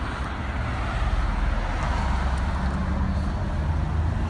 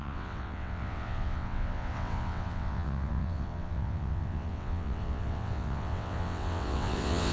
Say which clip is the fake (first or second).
second